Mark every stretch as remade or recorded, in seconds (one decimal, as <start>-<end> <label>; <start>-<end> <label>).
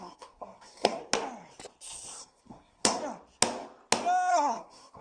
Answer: 0.0-1.0 remade; 1.0-2.2 recorded; 2.2-3.0 remade; 3.0-4.3 recorded; 4.3-5.0 remade